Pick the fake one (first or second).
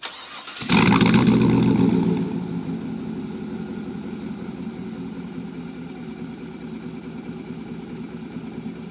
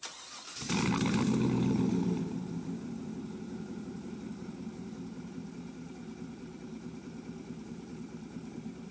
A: second